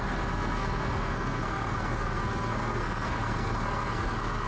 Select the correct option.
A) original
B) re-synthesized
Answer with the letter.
B